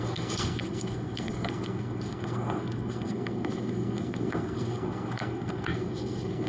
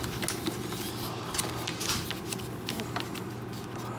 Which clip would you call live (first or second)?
second